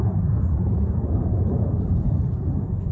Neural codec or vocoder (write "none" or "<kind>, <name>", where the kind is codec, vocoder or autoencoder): vocoder, Vocos